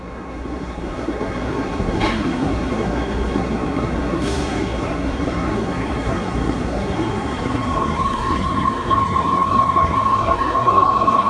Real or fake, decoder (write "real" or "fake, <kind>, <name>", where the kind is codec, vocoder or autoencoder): fake, codec, SNAC